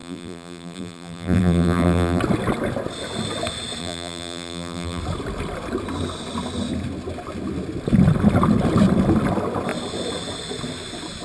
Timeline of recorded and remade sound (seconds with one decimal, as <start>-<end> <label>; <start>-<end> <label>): 0.0-2.2 remade; 2.2-3.8 recorded; 3.8-5.0 remade; 5.0-11.2 recorded